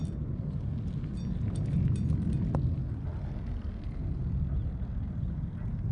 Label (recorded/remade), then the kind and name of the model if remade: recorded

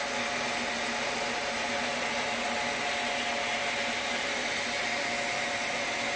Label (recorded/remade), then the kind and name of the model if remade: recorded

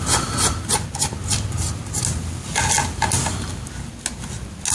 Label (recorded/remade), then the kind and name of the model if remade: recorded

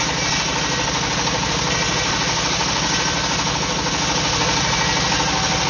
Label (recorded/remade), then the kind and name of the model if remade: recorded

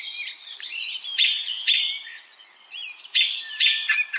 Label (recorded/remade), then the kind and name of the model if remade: remade, vocoder, BigVGAN v2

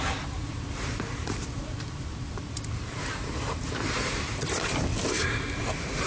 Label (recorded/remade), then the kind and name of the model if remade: remade, vocoder, BigVGAN v2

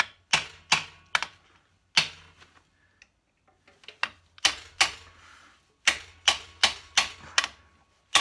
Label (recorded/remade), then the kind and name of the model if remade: recorded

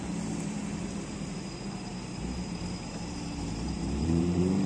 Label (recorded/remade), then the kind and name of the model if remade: remade, vocoder, BigVGAN v2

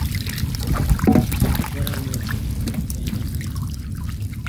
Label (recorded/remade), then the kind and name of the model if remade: remade, vocoder, BigVGAN v2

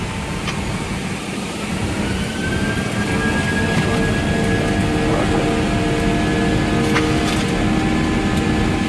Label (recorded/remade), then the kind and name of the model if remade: recorded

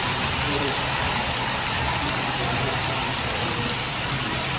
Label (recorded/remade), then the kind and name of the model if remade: remade, vocoder, BigVGAN v2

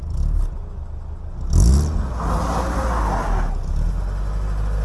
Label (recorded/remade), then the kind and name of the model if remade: recorded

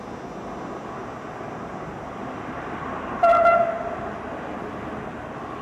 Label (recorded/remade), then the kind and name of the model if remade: recorded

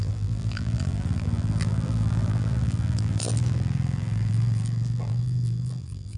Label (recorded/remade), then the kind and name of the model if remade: remade, vocoder, BigVGAN v2